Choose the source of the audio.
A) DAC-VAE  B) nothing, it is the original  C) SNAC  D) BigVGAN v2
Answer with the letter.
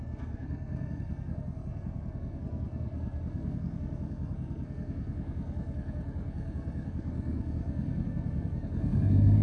C